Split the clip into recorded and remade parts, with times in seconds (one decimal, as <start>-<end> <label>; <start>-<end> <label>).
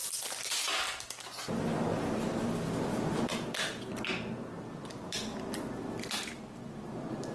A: 0.0-7.3 recorded